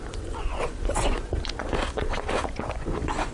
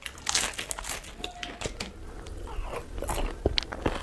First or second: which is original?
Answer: second